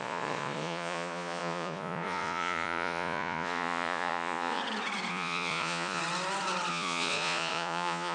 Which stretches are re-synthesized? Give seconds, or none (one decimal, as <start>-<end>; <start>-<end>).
0.0-4.6; 5.1-6.0; 6.7-8.1